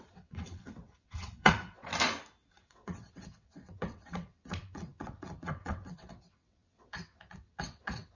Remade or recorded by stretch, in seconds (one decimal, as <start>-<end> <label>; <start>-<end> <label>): 0.0-1.9 remade; 1.9-2.5 recorded; 2.5-8.2 remade